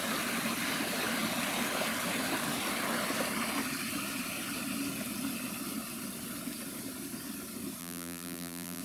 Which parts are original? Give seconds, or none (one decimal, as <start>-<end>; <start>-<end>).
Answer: 0.0-7.8